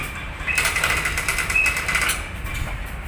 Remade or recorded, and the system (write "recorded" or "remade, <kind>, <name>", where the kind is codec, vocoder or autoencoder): recorded